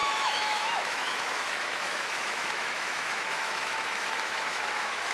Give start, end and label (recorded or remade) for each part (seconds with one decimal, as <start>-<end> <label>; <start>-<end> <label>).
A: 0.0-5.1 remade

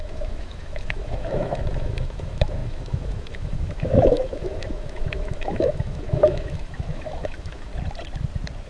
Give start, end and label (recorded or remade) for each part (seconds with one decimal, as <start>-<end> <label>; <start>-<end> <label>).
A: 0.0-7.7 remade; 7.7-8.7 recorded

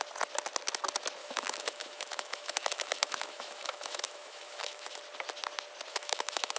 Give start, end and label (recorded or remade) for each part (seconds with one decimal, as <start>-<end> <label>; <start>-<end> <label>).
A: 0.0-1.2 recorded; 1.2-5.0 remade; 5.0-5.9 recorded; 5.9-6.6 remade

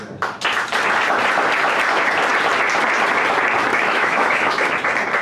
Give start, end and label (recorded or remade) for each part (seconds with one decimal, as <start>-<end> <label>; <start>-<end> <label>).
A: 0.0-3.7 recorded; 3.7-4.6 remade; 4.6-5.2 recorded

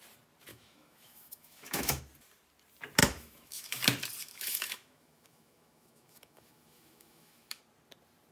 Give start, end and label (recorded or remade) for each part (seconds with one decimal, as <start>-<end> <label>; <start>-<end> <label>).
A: 0.0-0.5 recorded; 0.5-2.0 remade; 2.0-3.0 recorded; 3.0-3.8 remade; 3.8-4.2 recorded; 4.2-7.6 remade; 7.6-8.3 recorded

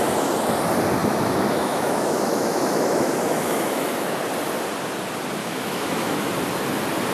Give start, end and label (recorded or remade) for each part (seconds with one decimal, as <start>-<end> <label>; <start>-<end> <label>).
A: 0.0-1.0 recorded; 1.0-4.2 remade; 4.2-5.4 recorded; 5.4-6.3 remade; 6.3-7.1 recorded

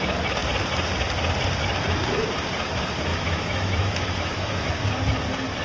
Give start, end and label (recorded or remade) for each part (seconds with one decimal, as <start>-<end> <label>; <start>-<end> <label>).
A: 0.0-3.1 recorded; 3.1-4.7 remade; 4.7-5.6 recorded

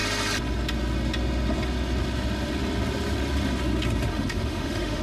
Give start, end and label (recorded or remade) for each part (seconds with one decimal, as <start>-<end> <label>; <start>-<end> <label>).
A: 0.0-4.1 recorded; 4.1-5.0 remade